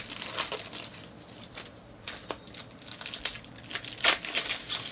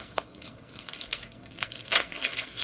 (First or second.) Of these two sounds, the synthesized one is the second